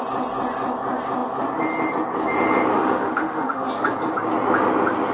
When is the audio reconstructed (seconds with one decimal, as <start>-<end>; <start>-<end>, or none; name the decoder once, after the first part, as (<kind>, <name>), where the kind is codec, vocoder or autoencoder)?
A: 2.7-3.7 (autoencoder, DAC-VAE)